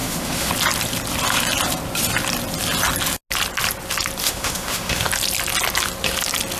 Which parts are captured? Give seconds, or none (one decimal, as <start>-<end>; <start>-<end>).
0.5-4.2; 5.0-6.6